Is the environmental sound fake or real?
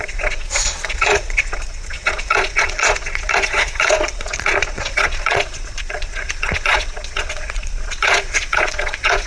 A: fake